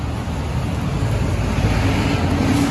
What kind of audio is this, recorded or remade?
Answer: recorded